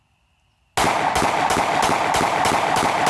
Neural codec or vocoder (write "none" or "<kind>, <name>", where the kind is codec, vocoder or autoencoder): none